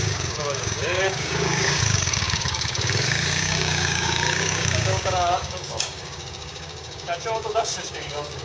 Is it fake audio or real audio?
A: fake